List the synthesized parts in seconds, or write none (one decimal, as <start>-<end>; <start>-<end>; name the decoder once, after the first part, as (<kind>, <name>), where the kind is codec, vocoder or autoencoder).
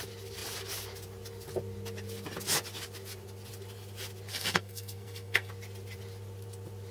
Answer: 4.3-5.5 (codec, SNAC)